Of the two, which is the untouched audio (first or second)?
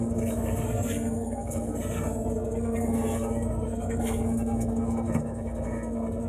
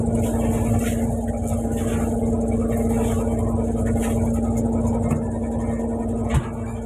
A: second